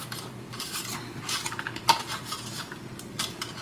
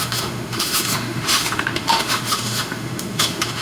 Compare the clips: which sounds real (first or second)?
first